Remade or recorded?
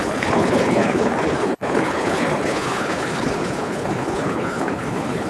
remade